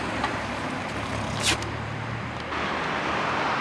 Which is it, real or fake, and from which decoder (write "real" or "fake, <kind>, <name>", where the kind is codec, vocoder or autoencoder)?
real